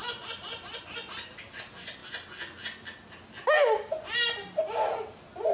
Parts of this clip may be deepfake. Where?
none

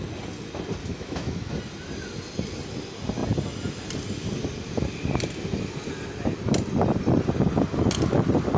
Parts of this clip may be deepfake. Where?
0.8-1.5 (autoencoder, DAC-VAE)

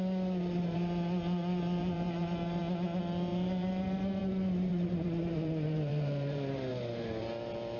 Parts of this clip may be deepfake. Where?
1.8-2.6 (vocoder, BigVGAN v2); 3.3-4.2; 4.7-6.7

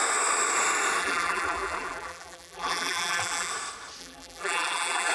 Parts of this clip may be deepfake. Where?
1.0-3.5 (vocoder, BigVGAN v2); 4.0-5.1

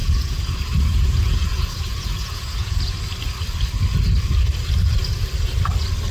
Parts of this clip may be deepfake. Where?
0.0-3.0 (vocoder, Vocos)

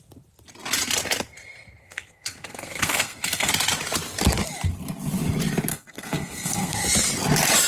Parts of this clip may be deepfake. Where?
1.8-3.5 (codec, SNAC); 5.7-6.7

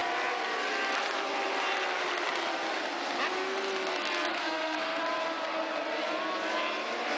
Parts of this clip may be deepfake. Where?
4.3-5.0 (codec, SNAC)